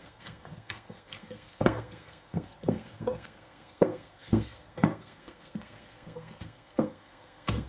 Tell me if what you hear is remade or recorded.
remade